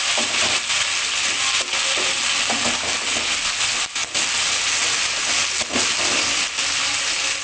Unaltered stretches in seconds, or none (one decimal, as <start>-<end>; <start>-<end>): 0.0-7.4